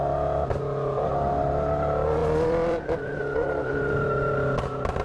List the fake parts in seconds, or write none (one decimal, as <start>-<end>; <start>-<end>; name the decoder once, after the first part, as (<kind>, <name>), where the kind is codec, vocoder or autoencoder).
2.2-3.2 (vocoder, BigVGAN v2)